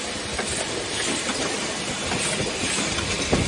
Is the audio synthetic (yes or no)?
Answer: no